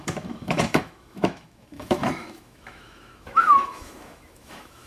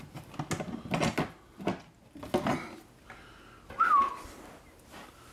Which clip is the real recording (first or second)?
second